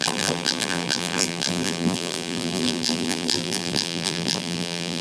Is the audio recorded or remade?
remade